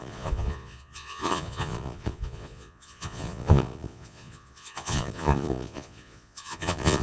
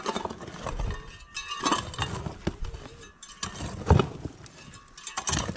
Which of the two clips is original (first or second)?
second